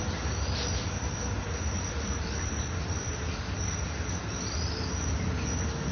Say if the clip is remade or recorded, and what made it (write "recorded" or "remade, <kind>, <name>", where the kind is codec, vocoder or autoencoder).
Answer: recorded